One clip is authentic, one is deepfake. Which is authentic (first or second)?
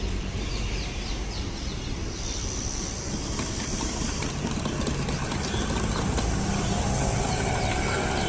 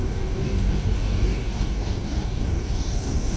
first